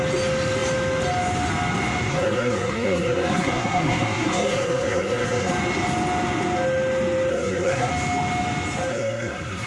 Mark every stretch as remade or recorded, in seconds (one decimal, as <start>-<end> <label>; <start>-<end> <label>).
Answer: 0.0-2.1 recorded; 2.1-5.5 remade; 5.5-7.3 recorded; 7.3-7.9 remade; 7.9-8.9 recorded; 8.9-9.7 remade